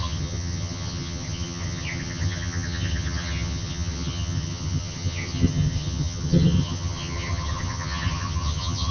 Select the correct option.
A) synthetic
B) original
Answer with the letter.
A